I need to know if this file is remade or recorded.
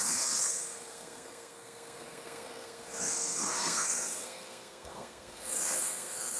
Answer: remade